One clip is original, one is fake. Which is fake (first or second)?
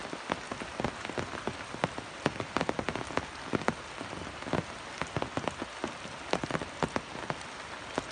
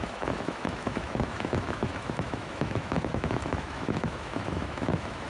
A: second